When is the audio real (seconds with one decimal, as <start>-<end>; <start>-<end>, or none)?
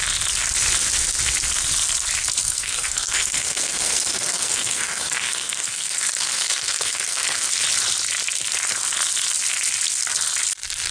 0.0-2.4; 7.5-10.9